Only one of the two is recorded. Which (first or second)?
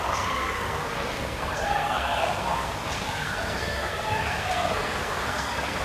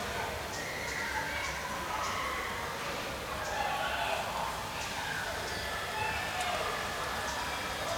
second